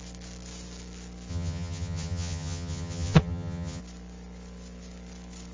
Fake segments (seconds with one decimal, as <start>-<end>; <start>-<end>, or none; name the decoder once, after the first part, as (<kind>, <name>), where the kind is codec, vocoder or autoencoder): 1.3-3.8 (vocoder, HiFi-GAN)